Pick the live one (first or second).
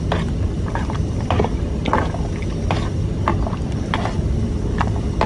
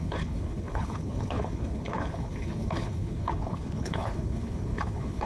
first